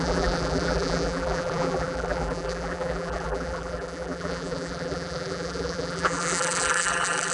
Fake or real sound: fake